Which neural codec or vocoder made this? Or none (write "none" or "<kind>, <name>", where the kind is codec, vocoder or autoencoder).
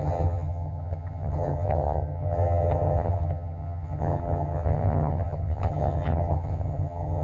vocoder, HiFi-GAN